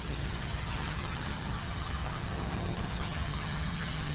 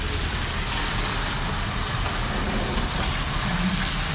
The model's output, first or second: first